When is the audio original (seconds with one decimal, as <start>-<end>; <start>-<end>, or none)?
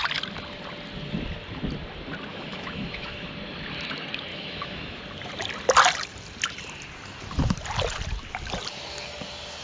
0.0-2.3; 3.3-4.3; 5.0-9.6